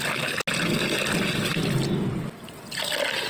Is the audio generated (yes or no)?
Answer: no